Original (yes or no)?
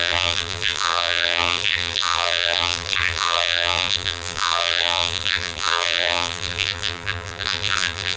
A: no